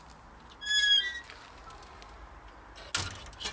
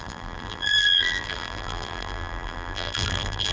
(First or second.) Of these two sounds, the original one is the first